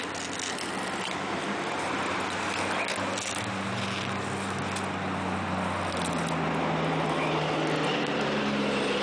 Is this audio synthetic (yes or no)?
no